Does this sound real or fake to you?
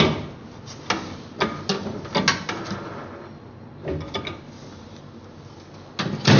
real